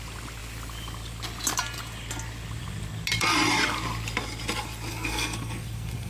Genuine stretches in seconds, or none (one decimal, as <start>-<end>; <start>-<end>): 0.0-4.9